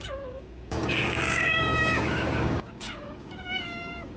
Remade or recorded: remade